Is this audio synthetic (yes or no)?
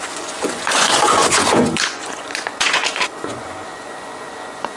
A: yes